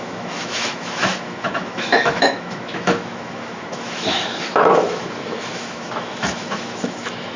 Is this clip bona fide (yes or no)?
no